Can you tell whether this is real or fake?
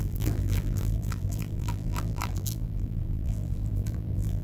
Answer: fake